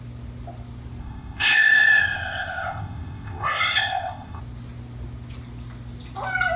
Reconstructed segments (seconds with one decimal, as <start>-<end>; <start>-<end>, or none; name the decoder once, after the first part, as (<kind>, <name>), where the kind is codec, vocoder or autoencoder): 1.0-4.4 (codec, ZipCodec)